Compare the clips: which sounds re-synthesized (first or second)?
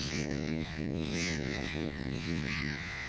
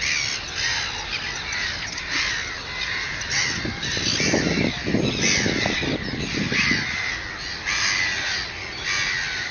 first